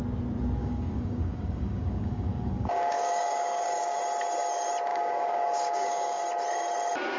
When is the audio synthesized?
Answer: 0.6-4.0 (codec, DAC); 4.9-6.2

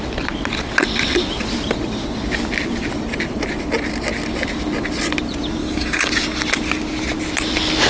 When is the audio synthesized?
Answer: 5.6-6.1 (codec, DAC)